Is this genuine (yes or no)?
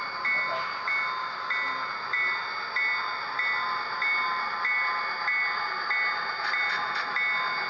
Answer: yes